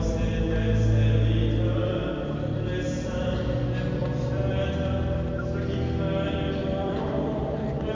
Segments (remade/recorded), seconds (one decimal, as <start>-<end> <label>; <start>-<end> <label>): 0.0-4.0 recorded; 4.0-4.7 remade; 4.7-6.6 recorded; 6.6-7.4 remade; 7.4-7.9 recorded